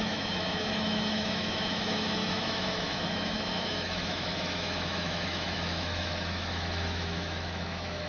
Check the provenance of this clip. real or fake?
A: fake